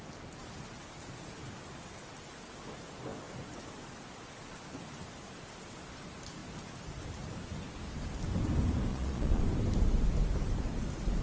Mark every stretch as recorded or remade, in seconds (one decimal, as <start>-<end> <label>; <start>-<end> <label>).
0.0-8.9 recorded; 8.9-9.4 remade; 9.4-11.2 recorded